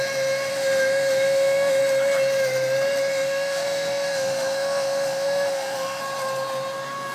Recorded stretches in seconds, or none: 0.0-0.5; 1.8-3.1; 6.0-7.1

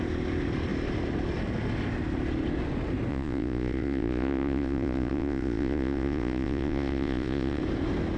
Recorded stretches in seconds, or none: 0.0-3.1; 7.6-8.2

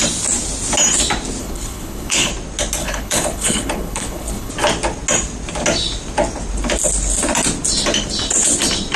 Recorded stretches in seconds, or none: 0.0-1.4; 2.3-2.8; 4.5-9.0

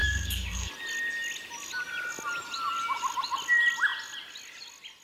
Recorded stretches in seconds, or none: 0.7-5.0

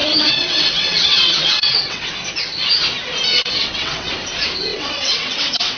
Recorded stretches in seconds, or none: 2.1-3.3; 4.1-4.7